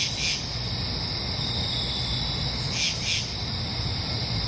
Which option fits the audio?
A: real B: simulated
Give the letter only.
A